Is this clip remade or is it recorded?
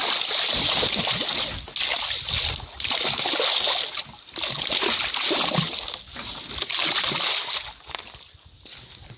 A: recorded